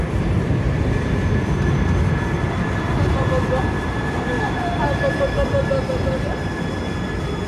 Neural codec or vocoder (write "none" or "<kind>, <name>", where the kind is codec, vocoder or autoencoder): none